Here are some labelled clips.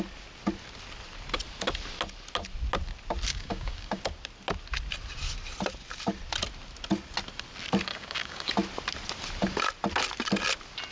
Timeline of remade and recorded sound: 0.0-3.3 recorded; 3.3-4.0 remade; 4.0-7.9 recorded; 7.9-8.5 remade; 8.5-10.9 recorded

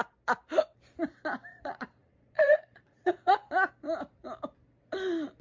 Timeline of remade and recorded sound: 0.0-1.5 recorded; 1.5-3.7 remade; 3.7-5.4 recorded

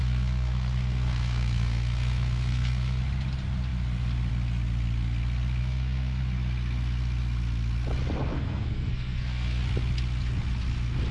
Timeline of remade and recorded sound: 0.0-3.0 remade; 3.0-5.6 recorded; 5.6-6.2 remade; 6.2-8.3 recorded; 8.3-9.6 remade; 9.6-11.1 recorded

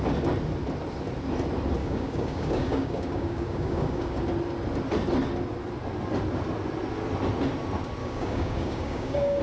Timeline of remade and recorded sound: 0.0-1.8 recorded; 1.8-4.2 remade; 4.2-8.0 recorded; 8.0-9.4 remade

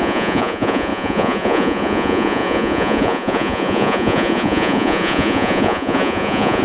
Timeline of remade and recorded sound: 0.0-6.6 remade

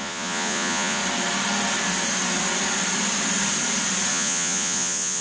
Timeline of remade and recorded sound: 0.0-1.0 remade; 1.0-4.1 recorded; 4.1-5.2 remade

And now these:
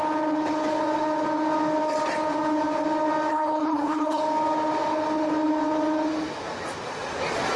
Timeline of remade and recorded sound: 0.0-3.3 recorded; 3.3-4.2 remade; 4.2-7.6 recorded

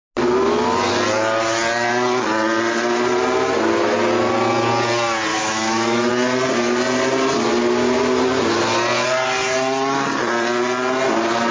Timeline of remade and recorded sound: 0.0-5.3 recorded; 5.3-6.1 remade; 6.1-11.5 recorded